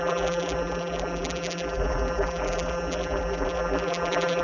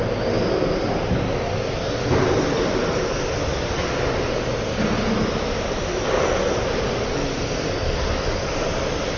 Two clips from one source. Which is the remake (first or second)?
first